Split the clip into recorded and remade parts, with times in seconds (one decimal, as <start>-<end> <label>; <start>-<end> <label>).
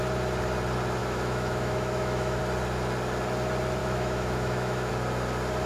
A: 0.0-1.0 recorded; 1.0-2.4 remade; 2.4-3.8 recorded; 3.8-4.9 remade; 4.9-5.7 recorded